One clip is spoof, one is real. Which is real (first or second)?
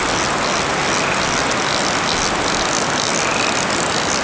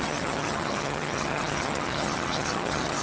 first